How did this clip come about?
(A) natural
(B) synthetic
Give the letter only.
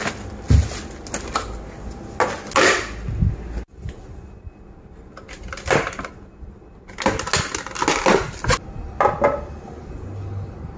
A